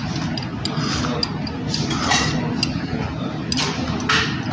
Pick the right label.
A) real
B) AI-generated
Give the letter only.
A